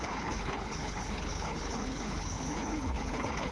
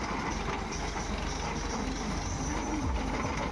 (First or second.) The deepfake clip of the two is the first